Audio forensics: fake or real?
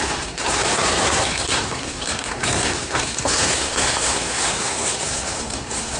fake